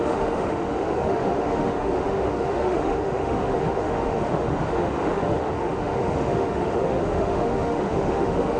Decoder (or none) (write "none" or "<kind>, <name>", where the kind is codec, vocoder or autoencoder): autoencoder, DAC-VAE